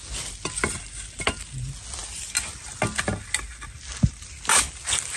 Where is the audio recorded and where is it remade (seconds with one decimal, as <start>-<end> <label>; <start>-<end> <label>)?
0.0-5.2 recorded